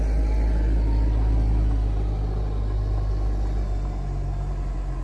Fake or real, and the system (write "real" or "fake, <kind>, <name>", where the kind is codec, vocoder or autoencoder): real